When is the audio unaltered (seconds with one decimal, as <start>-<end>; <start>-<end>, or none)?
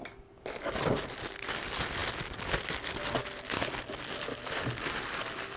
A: 0.0-5.6